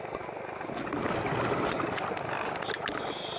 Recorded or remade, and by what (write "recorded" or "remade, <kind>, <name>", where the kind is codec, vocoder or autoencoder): recorded